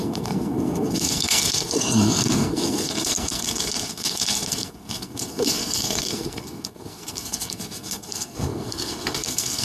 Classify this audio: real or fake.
fake